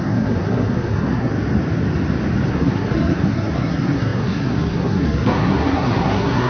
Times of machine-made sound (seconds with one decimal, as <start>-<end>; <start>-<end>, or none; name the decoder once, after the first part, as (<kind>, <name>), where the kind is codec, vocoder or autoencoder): 0.0-1.3 (codec, SNAC); 2.5-6.5